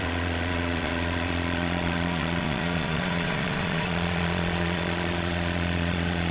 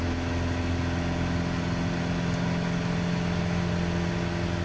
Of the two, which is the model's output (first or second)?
first